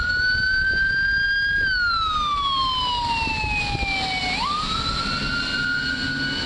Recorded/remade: recorded